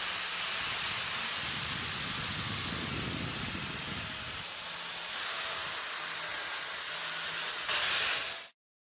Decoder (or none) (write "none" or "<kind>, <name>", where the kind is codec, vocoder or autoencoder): none